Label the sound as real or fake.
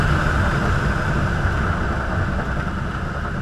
real